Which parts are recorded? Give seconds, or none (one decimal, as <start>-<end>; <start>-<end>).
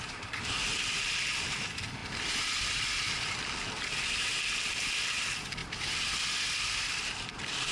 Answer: 0.0-7.7